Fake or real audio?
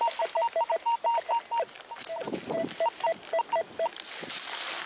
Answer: real